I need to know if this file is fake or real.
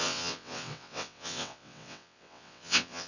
fake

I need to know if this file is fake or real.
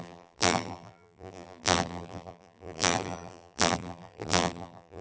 fake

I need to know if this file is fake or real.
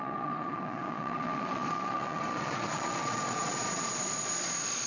fake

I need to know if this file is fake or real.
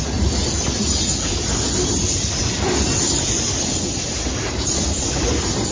real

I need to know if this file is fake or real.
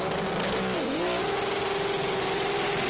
real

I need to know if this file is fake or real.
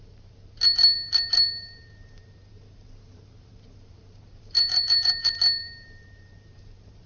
fake